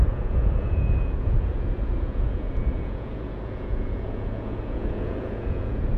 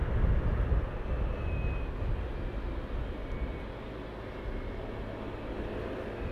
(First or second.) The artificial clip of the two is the first